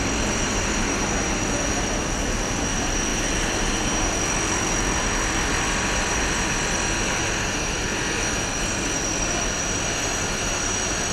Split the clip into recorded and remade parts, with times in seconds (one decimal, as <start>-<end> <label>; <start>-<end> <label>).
0.0-11.1 recorded